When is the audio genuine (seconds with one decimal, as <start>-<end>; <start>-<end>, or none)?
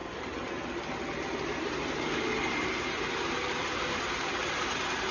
none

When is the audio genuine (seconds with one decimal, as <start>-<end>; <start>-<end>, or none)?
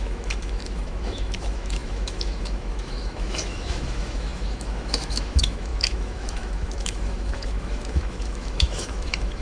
none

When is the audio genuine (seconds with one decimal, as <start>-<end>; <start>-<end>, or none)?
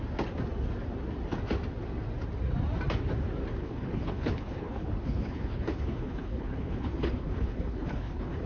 0.0-3.6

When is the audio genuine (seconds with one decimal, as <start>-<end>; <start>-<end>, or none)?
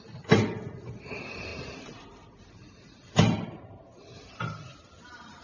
none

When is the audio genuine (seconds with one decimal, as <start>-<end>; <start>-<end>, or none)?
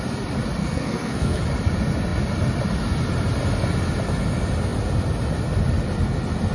0.0-0.6; 1.4-6.5